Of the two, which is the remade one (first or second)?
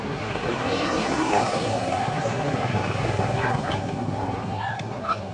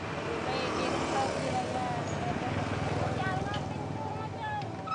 first